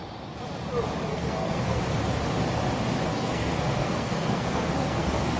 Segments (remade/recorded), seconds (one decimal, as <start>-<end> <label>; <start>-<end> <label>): 0.0-1.1 recorded; 1.1-1.8 remade; 1.8-3.1 recorded; 3.1-5.4 remade